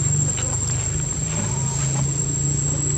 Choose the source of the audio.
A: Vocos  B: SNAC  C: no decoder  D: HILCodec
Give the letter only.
C